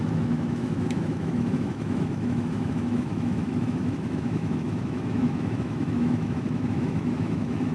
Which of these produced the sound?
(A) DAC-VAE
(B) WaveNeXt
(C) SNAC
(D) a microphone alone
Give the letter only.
A